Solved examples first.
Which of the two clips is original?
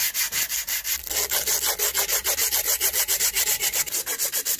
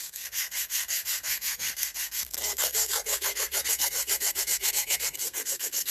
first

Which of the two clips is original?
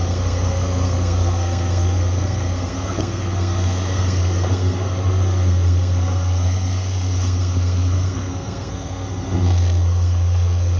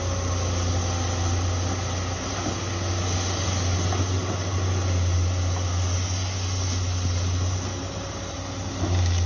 second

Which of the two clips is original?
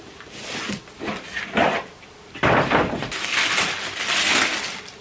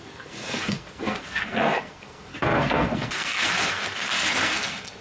first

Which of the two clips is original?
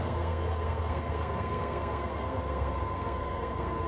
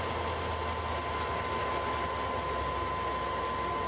second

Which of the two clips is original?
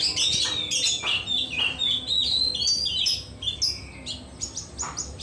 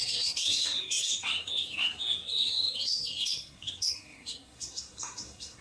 first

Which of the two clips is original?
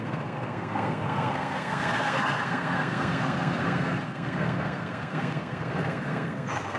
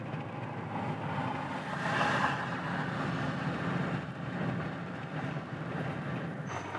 second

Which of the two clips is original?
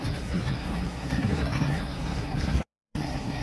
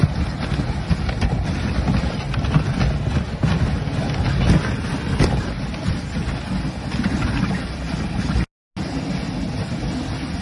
second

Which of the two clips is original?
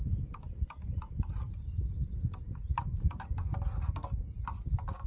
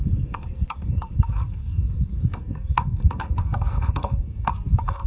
first